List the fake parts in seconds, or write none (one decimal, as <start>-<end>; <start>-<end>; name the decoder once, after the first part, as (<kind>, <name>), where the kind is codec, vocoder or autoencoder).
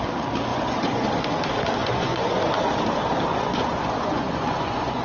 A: 0.5-1.1 (vocoder, Vocos); 1.8-2.4; 3.3-5.0